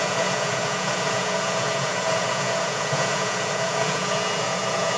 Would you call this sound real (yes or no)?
no